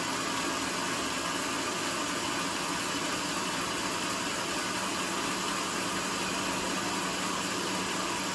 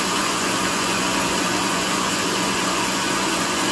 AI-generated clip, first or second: second